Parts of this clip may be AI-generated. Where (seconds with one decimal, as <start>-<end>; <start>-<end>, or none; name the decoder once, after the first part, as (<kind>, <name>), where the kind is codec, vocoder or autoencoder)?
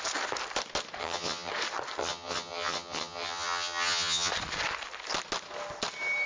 1.0-1.5 (vocoder, HiFi-GAN); 2.0-4.3